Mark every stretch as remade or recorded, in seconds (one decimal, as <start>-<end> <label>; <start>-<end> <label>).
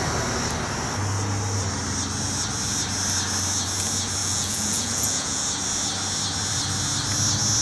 0.0-4.2 recorded; 4.2-5.4 remade; 5.4-7.6 recorded